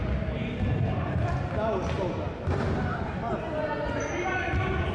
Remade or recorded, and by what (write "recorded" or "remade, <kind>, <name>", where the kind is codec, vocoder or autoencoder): recorded